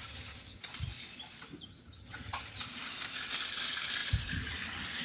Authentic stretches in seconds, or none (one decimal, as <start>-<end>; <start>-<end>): 0.6-2.0; 2.6-5.0